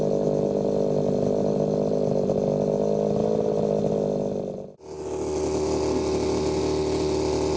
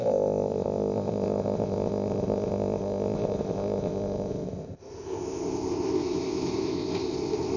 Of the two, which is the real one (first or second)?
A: first